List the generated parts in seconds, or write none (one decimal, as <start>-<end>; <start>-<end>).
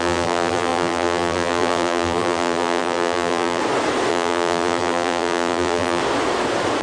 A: 0.0-3.6; 4.1-6.0